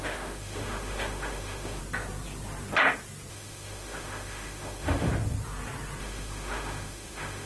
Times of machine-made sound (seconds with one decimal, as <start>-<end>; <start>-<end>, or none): 0.0-1.8; 3.3-5.1; 6.0-7.5